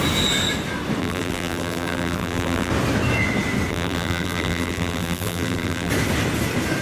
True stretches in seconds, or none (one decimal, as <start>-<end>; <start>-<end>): 0.0-1.0; 2.7-3.7; 5.9-6.8